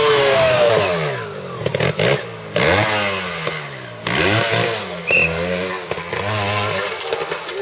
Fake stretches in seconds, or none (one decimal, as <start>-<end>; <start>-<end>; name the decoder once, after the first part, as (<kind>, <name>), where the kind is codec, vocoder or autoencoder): 0.0-0.7 (autoencoder, DAC-VAE)